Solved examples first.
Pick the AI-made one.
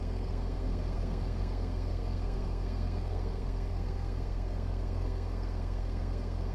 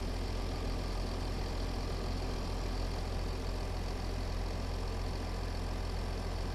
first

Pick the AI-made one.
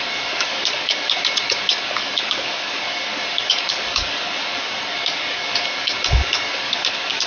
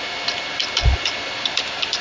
first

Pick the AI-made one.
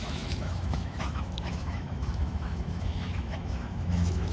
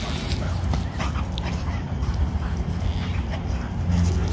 first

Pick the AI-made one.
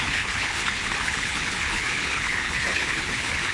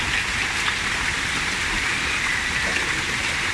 first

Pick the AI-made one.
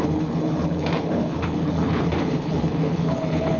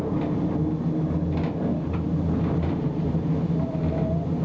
first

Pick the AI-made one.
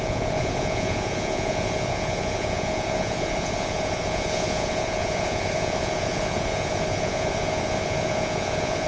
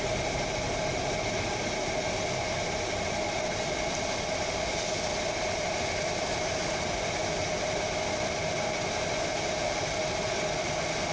first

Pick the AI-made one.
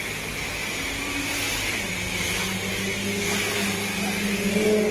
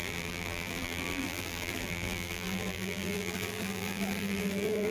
second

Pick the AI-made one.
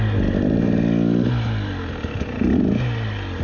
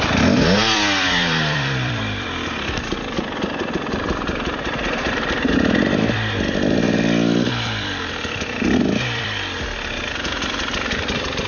second